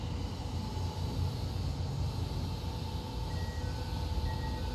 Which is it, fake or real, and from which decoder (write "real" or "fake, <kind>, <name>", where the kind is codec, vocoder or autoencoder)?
real